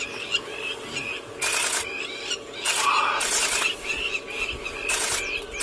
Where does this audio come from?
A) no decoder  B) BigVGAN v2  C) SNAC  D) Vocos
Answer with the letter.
A